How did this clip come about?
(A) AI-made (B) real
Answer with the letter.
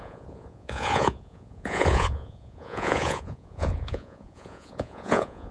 A